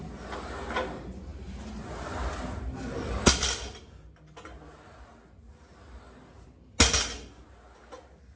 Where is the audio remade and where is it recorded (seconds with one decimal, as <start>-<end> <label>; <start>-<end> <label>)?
0.0-8.4 recorded